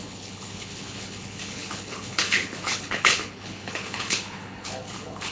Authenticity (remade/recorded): remade